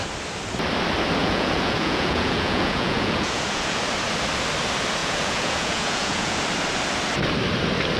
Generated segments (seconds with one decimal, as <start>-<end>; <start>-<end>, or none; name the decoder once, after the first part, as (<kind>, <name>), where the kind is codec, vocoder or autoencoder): 1.2-3.8 (vocoder, Vocos); 5.0-6.4